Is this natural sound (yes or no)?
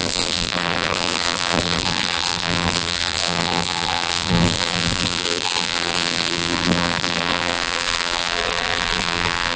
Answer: no